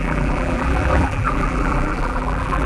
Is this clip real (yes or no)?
no